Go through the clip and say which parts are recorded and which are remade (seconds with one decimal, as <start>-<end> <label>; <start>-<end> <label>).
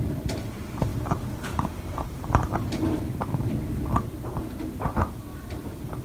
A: 0.0-3.3 remade; 3.3-4.0 recorded; 4.0-6.0 remade